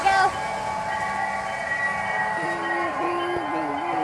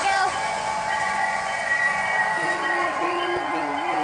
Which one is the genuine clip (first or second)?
first